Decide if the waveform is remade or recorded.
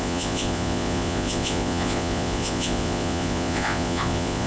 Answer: remade